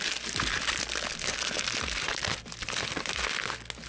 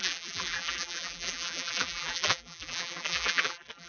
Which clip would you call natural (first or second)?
first